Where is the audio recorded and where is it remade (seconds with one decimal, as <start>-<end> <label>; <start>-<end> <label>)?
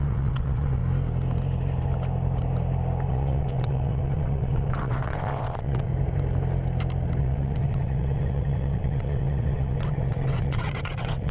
0.0-0.8 remade; 0.8-3.1 recorded; 3.1-5.9 remade; 5.9-7.2 recorded; 7.2-11.3 remade